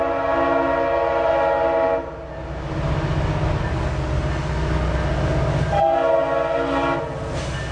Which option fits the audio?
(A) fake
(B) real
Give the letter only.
B